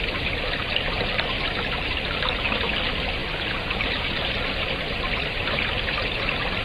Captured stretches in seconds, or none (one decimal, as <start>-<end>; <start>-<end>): 0.0-3.2; 4.6-6.6